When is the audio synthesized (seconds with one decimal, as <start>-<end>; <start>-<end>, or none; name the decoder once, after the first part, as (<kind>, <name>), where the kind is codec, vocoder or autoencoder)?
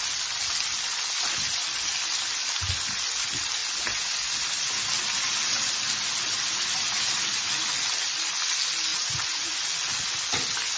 8.9-9.6 (vocoder, Vocos)